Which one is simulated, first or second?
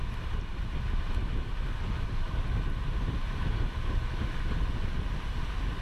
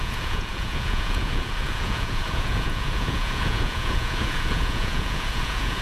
second